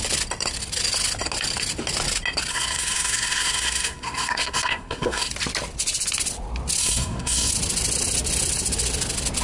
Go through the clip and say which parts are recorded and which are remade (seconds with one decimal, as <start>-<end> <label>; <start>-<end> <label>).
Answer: 0.0-2.5 recorded; 2.5-5.3 remade; 5.3-6.8 recorded; 6.8-7.5 remade; 7.5-9.4 recorded